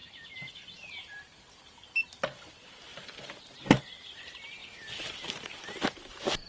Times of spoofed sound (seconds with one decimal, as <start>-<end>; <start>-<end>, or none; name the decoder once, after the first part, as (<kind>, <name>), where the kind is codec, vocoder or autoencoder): 0.0-0.5 (vocoder, BigVGAN v2); 2.9-3.8; 4.6-5.3